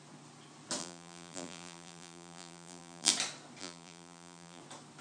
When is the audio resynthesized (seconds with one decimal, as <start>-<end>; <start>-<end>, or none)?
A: 0.8-3.1; 3.6-4.6